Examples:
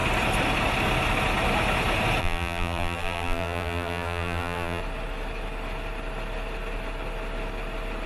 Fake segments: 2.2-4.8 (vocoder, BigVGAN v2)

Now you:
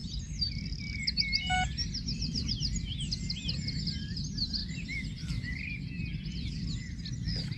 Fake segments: none

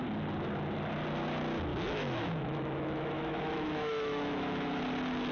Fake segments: 1.7-4.8 (autoencoder, DAC-VAE)